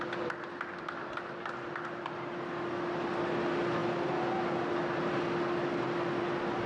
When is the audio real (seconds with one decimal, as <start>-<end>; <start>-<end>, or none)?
0.0-6.7